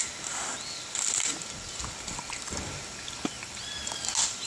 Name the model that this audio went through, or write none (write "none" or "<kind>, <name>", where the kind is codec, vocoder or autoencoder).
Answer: none